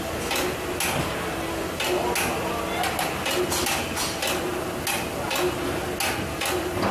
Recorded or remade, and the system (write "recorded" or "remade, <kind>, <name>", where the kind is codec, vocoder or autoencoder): recorded